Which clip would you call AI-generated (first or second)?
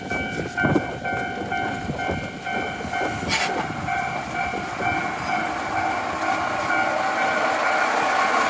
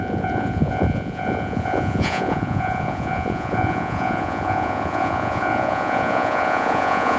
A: second